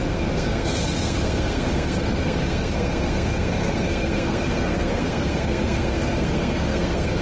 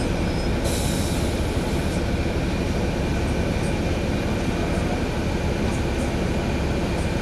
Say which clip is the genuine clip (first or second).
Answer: second